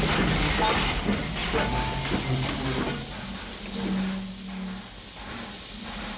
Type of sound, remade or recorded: recorded